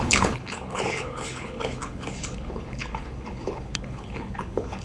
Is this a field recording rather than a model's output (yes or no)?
no